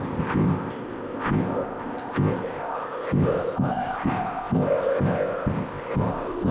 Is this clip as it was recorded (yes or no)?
no